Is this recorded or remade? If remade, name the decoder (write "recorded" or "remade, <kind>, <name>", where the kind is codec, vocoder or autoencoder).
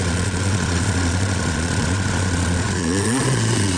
remade, vocoder, Vocos